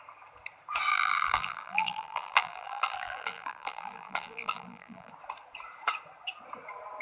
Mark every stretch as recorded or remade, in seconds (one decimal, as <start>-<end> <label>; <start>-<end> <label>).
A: 0.0-0.9 recorded; 0.9-5.1 remade; 5.1-7.0 recorded